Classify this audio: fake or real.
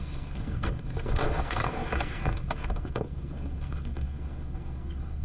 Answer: fake